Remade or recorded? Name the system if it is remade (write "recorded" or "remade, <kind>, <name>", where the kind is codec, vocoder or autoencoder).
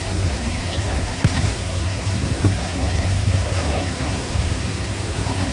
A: remade, codec, SNAC